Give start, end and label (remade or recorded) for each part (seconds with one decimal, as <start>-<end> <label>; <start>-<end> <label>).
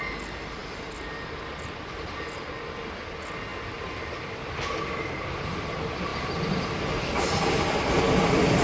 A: 0.0-8.6 recorded